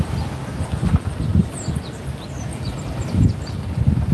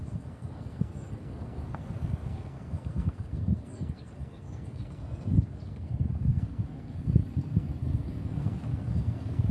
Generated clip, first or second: second